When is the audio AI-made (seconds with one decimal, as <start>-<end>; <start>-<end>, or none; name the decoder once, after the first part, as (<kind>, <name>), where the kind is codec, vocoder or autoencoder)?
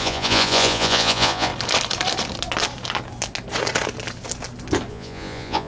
0.0-1.5 (vocoder, Vocos); 4.9-5.7